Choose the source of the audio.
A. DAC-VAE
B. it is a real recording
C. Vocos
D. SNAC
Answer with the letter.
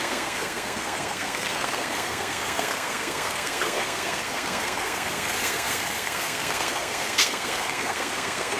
D